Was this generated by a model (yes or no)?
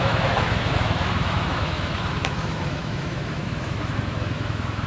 yes